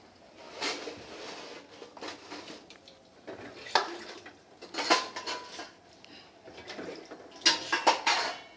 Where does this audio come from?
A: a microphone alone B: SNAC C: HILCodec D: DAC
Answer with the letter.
A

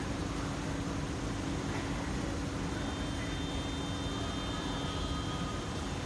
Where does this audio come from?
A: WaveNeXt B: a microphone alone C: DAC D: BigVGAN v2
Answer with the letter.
B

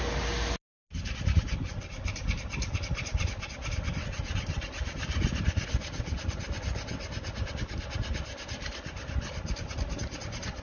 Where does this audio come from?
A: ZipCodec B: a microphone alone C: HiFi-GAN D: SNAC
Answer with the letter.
B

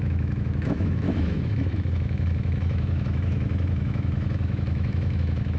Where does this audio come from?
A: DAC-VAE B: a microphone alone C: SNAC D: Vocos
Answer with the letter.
A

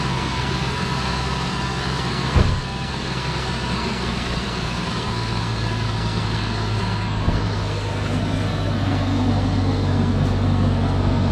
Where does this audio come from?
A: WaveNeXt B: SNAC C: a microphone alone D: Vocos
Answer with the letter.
B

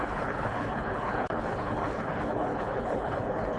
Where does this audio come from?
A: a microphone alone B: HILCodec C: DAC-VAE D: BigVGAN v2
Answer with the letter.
B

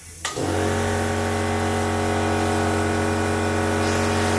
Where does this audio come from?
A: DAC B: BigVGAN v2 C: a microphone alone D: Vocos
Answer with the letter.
C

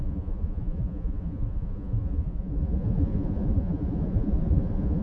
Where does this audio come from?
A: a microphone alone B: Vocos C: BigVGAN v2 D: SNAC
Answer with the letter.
B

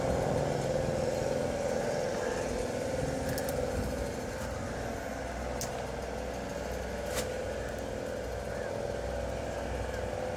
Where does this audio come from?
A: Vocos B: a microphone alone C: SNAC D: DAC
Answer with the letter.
B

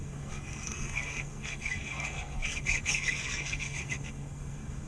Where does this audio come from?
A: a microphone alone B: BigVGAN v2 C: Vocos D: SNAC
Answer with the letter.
D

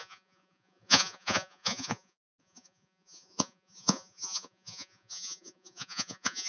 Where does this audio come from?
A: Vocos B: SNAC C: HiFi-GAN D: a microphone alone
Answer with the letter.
A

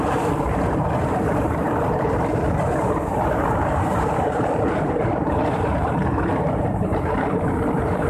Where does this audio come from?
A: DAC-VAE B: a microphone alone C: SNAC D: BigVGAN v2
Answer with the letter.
D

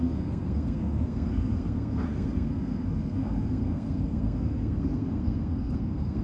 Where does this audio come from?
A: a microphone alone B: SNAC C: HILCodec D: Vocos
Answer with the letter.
B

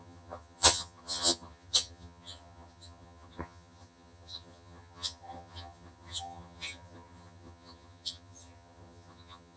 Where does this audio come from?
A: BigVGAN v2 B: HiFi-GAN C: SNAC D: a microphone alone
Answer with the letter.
B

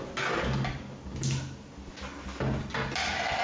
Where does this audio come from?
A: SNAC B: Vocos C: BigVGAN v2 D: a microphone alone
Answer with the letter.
D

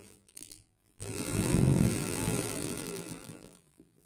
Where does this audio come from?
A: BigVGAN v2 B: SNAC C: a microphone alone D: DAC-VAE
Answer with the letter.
A